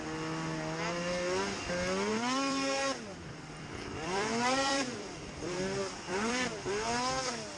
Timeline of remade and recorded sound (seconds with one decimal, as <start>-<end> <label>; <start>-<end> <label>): 0.0-2.1 recorded; 2.1-6.7 remade; 6.7-7.6 recorded